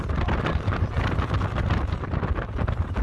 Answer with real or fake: real